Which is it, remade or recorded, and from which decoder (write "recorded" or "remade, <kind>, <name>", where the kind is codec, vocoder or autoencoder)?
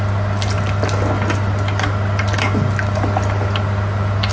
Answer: recorded